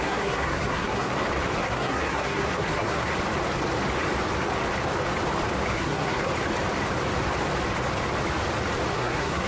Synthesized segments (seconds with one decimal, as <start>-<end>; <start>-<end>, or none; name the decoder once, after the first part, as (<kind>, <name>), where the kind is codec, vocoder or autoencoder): 0.0-1.1 (codec, SNAC); 1.6-3.1; 5.7-6.3; 8.9-9.5